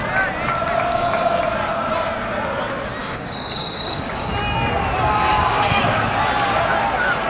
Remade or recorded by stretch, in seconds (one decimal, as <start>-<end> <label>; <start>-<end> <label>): 0.0-0.9 recorded; 0.9-1.4 remade; 1.4-3.0 recorded; 3.0-4.3 remade; 4.3-5.1 recorded; 5.1-5.8 remade; 5.8-7.3 recorded

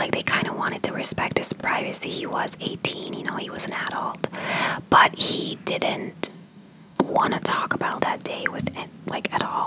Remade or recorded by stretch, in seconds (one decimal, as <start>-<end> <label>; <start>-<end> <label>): 0.0-6.3 recorded; 6.3-7.1 remade; 7.1-9.7 recorded